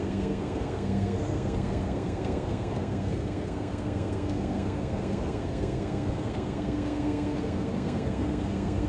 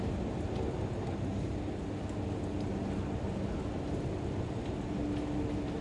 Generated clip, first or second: first